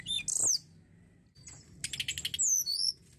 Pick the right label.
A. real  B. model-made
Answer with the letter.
A